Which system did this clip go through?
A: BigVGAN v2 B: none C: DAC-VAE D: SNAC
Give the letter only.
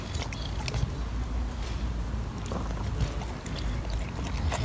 B